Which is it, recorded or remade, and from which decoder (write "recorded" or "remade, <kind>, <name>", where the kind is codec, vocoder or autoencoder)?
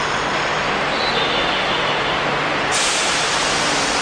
recorded